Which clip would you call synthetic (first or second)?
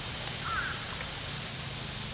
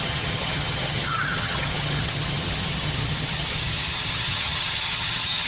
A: second